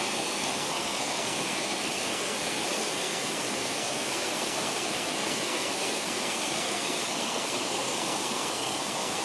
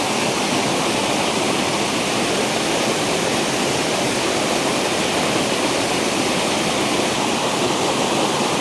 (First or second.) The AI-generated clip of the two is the first